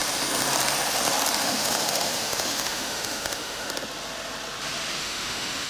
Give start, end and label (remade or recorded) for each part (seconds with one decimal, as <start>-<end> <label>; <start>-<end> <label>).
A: 0.0-1.4 recorded; 1.4-3.7 remade; 3.7-5.0 recorded; 5.0-5.7 remade